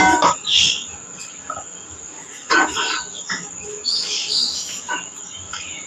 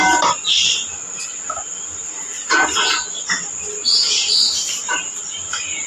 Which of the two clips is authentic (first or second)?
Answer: second